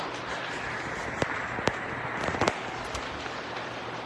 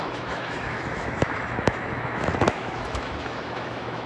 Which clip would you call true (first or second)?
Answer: first